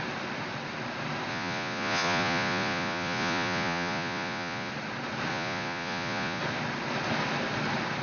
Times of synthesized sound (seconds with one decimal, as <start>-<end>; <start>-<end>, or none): 1.3-4.7; 5.3-6.4